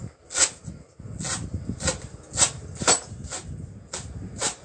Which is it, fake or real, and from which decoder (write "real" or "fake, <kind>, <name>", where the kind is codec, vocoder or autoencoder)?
real